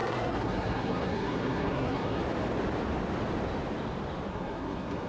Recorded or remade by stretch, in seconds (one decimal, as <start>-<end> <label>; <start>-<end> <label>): 0.0-2.2 remade; 2.2-4.3 recorded; 4.3-5.1 remade